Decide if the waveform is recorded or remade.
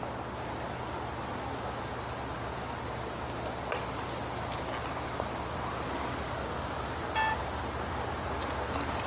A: recorded